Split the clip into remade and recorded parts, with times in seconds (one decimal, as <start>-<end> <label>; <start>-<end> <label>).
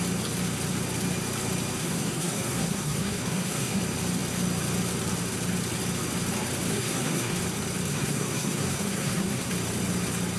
0.0-1.8 recorded; 1.8-3.8 remade; 3.8-6.7 recorded; 6.7-7.4 remade; 7.4-7.9 recorded; 7.9-9.5 remade; 9.5-10.4 recorded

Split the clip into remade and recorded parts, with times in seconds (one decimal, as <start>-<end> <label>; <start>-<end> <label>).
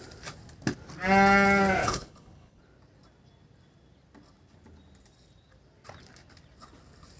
0.0-1.8 recorded; 1.8-2.6 remade; 2.6-7.2 recorded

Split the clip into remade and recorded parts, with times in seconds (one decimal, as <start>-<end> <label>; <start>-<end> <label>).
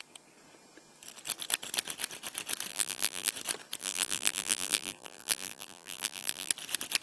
0.0-2.7 recorded; 2.7-3.3 remade; 3.3-3.8 recorded; 3.8-6.5 remade; 6.5-7.0 recorded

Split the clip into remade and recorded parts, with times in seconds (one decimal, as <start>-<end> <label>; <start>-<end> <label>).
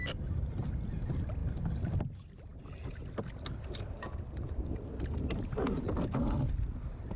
0.0-7.2 recorded